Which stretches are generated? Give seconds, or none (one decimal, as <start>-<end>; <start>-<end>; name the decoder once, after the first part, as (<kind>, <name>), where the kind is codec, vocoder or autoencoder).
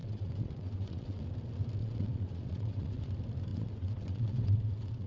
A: 0.0-1.2 (vocoder, WaveNeXt); 1.8-3.1; 3.5-5.1